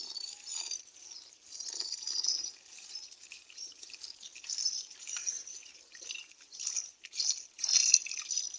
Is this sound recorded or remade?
recorded